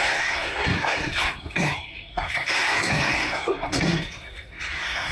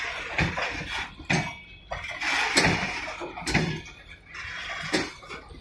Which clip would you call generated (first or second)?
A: first